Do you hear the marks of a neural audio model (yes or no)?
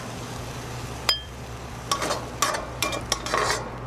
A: no